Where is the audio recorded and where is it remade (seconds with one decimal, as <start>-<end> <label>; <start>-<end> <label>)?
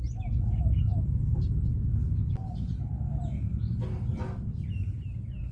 0.0-5.5 recorded